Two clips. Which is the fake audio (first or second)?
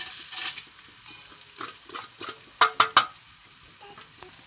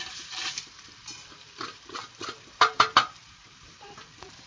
second